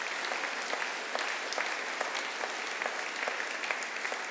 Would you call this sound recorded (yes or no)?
yes